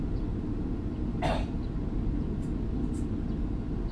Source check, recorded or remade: recorded